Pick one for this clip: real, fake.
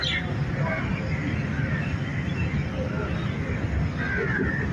fake